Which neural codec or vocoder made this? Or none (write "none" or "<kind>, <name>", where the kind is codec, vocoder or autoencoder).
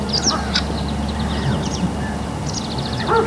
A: none